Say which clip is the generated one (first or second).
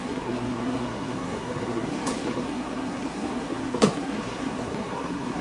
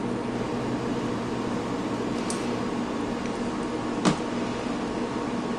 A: first